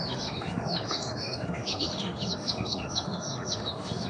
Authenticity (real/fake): fake